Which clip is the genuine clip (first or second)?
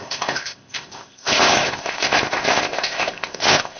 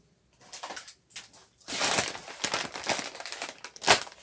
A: second